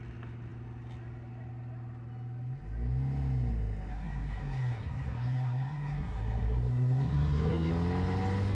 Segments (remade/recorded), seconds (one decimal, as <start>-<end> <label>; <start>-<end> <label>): 0.0-3.9 recorded; 3.9-7.7 remade; 7.7-8.5 recorded